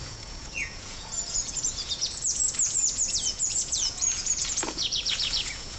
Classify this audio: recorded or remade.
remade